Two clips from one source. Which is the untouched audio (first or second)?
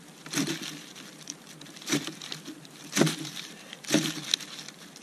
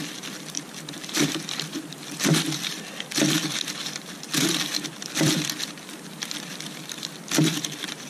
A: first